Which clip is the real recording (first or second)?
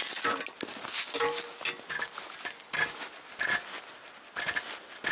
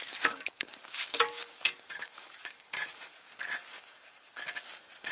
first